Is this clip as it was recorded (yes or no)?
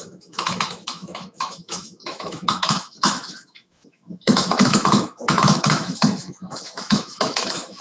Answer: no